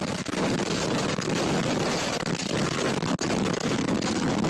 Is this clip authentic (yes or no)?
yes